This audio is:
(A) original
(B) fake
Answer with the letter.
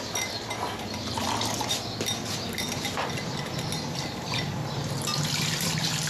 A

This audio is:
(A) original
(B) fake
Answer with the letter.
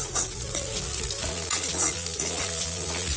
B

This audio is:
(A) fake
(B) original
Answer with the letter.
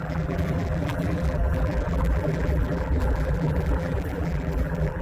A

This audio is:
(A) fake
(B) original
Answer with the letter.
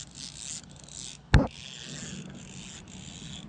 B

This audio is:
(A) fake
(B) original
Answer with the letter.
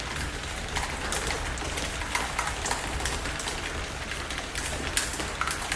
B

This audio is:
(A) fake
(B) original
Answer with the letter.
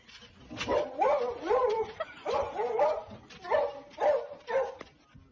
B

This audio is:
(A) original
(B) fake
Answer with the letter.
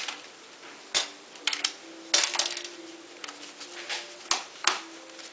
A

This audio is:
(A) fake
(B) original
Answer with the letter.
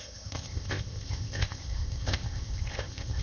A